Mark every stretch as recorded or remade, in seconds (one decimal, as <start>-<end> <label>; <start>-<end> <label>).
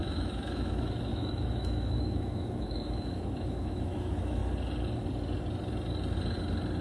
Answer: 0.0-4.4 remade; 4.4-6.8 recorded